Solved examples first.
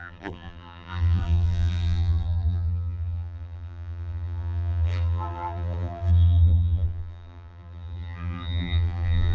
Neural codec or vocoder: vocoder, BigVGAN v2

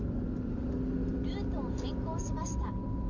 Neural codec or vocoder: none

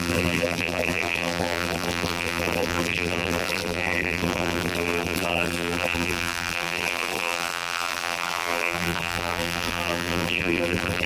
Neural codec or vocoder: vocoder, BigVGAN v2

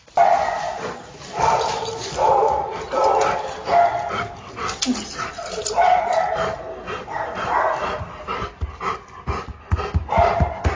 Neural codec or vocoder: none